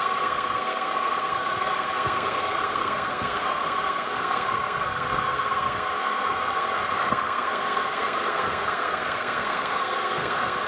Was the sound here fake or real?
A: fake